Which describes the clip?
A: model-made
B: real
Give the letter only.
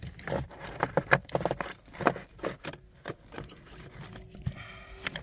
A